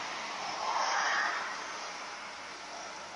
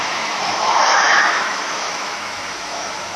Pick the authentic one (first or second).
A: first